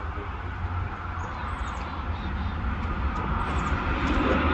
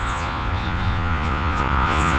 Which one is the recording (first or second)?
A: first